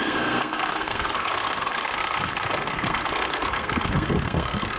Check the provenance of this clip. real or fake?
fake